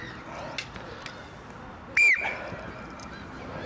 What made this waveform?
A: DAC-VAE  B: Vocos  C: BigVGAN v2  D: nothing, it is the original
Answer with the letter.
D